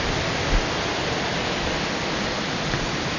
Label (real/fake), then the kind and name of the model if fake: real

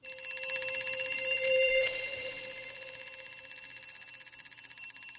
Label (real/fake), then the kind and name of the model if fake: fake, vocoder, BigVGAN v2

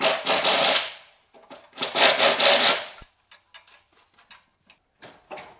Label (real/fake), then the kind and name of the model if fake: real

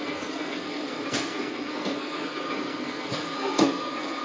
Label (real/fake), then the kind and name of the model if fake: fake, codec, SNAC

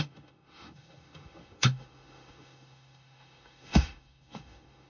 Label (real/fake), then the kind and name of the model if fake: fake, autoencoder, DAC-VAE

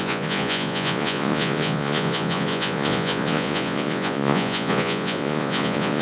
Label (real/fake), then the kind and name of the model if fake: fake, vocoder, Vocos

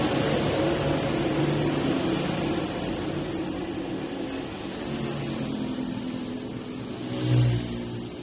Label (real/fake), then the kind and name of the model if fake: real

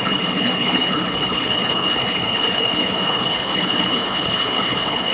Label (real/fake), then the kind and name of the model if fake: fake, codec, HILCodec